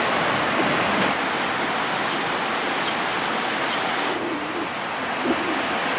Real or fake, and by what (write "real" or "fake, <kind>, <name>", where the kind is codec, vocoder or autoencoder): real